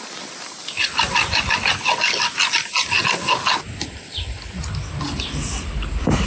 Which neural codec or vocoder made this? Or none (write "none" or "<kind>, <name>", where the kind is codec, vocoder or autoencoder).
none